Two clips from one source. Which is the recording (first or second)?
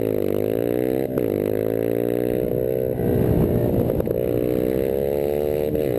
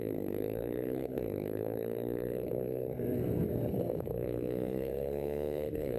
first